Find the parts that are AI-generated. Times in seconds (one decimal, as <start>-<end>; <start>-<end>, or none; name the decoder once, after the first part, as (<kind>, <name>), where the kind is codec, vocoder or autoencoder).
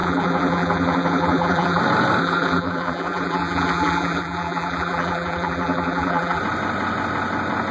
0.0-1.8 (vocoder, BigVGAN v2); 2.2-6.4